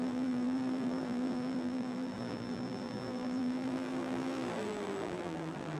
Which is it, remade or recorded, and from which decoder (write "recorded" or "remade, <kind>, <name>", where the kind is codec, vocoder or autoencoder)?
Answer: remade, vocoder, BigVGAN v2